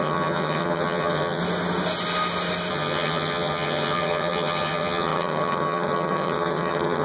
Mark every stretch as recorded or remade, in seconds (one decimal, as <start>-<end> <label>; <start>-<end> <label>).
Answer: 0.0-1.4 remade; 1.4-2.7 recorded; 2.7-7.0 remade